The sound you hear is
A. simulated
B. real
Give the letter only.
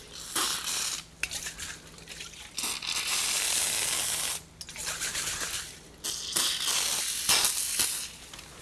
B